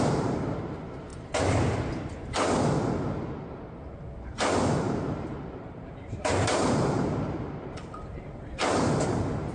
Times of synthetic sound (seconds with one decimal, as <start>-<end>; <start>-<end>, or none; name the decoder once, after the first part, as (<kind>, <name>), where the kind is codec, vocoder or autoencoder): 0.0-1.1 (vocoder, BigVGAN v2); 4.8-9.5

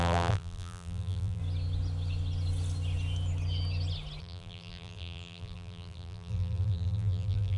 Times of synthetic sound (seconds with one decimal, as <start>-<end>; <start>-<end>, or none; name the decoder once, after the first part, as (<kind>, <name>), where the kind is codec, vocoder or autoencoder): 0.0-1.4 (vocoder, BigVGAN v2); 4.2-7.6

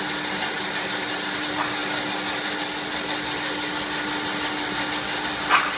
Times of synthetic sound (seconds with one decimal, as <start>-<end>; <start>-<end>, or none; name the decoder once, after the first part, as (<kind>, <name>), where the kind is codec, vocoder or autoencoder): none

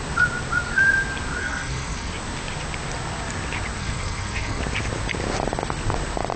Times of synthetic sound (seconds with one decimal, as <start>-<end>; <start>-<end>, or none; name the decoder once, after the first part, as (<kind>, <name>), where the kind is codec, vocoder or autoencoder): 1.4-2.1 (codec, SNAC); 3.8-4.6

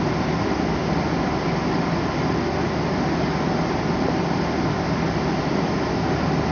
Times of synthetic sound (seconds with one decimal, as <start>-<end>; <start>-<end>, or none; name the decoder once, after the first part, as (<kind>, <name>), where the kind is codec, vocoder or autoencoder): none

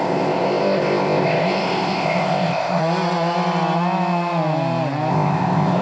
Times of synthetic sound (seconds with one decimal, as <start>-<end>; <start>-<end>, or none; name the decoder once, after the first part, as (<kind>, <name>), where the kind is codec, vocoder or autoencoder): 0.0-2.8 (codec, ZipCodec); 5.1-5.8

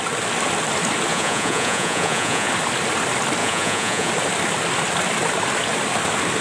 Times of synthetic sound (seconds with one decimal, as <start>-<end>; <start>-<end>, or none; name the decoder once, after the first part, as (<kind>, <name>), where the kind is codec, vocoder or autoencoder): 1.1-2.5 (vocoder, Vocos); 3.4-4.1

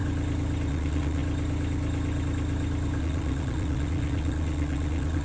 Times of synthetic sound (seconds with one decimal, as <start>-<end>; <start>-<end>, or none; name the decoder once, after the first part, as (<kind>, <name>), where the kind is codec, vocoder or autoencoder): 0.7-1.2 (vocoder, Vocos); 3.0-5.2